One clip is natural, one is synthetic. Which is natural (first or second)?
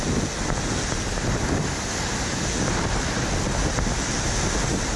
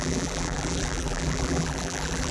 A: first